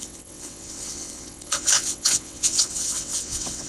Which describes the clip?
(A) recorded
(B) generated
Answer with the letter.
B